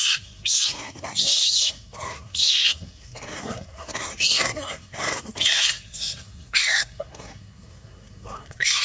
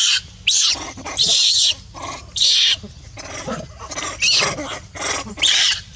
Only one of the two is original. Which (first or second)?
second